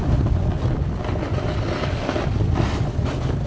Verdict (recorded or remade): recorded